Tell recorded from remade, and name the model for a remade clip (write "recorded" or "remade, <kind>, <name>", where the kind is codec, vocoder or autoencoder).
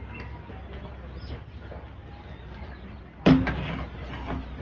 recorded